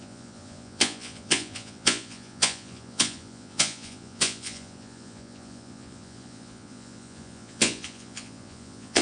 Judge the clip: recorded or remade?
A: remade